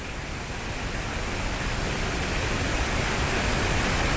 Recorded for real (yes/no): yes